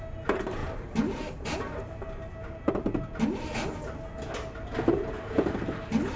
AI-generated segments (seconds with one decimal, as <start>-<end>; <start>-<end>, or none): none